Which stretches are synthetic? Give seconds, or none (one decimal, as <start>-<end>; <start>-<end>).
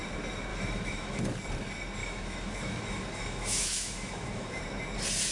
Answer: 0.5-1.2; 2.0-4.6